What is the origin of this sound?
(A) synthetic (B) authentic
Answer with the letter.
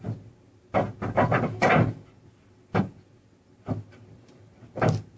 B